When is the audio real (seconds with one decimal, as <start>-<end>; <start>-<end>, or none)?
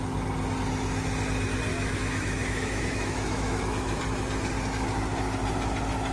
0.0-1.7; 4.0-6.1